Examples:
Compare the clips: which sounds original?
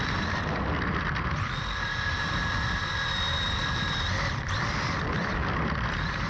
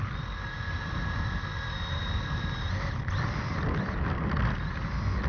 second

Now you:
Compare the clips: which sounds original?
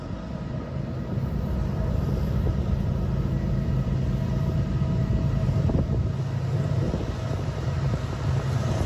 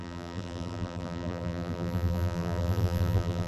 first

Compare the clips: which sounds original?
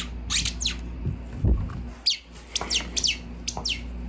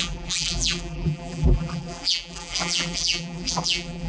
first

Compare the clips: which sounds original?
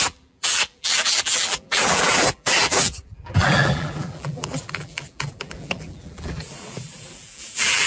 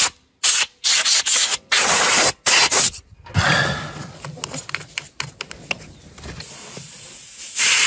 second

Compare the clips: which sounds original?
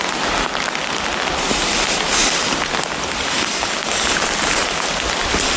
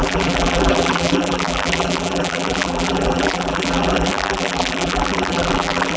first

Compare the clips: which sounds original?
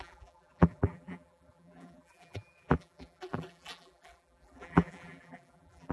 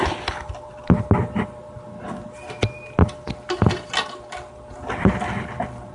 second